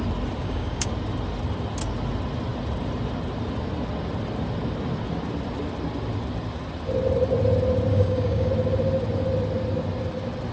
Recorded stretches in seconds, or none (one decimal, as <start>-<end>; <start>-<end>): 0.0-0.4; 0.9-7.9; 8.5-10.5